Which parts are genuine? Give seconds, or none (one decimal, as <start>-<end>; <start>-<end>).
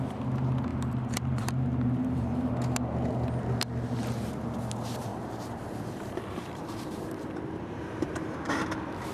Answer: 0.0-0.7; 2.5-5.1; 8.3-9.1